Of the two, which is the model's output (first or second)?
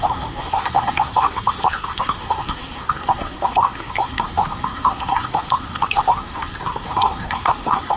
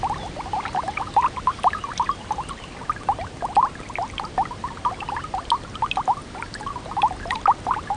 first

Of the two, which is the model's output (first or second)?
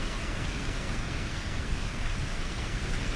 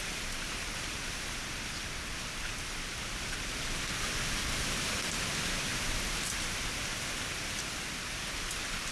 first